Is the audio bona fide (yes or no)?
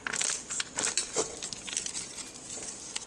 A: yes